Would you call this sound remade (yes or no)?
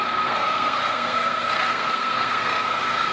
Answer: yes